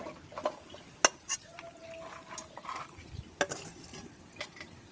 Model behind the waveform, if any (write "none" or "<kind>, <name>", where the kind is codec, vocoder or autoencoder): none